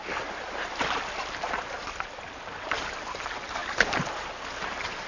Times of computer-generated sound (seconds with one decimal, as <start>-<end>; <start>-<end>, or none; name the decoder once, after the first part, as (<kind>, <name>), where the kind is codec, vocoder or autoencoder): none

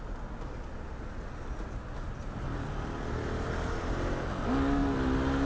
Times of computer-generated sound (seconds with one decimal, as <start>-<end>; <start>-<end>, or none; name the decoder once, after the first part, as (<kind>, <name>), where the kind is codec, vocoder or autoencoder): none

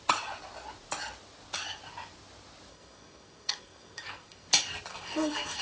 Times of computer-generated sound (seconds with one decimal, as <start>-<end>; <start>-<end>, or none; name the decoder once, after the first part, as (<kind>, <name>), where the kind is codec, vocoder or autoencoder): 2.7-4.5 (codec, SNAC); 4.9-5.6